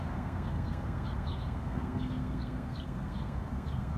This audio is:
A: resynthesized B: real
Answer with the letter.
A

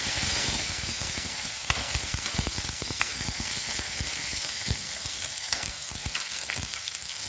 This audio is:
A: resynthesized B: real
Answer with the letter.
A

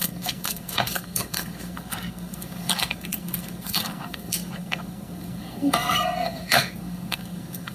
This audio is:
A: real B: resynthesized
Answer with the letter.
B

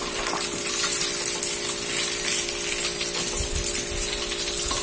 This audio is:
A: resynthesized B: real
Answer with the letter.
B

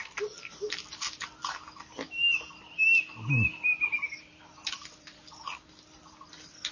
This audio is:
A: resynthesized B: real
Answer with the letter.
B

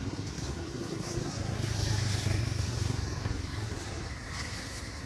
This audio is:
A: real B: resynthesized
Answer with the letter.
B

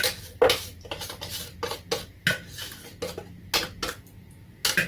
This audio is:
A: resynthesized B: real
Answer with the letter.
B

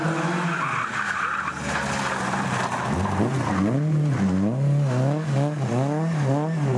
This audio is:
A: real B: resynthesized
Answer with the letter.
A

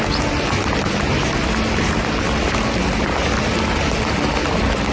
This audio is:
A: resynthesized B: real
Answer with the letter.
B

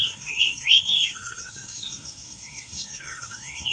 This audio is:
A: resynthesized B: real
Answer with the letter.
A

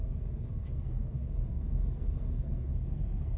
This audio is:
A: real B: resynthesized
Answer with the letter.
B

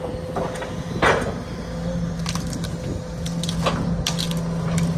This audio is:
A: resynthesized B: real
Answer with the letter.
B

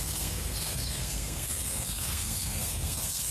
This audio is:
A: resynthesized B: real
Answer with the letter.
A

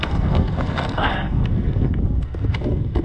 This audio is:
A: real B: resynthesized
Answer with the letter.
B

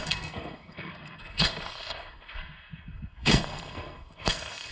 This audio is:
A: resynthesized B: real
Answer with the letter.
A